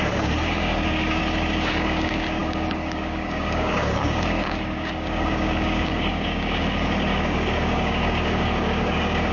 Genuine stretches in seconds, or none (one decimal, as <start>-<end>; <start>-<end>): 1.2-1.7